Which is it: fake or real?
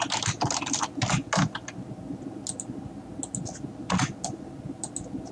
real